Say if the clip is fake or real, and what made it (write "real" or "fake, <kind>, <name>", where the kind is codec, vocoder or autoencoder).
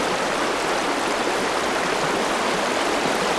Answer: real